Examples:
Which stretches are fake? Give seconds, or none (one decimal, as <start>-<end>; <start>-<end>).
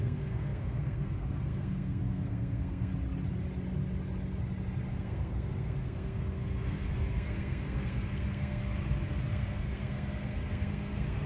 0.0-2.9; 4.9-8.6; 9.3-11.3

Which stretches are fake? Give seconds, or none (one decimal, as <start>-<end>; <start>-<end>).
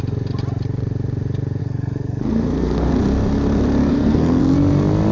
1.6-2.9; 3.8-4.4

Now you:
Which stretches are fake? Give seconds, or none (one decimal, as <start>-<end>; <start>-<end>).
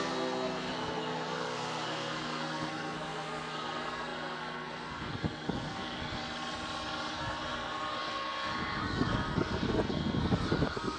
0.0-6.2; 7.1-11.0